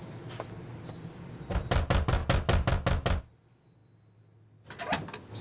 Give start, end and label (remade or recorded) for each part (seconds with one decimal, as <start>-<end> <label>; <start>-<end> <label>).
0.0-5.4 recorded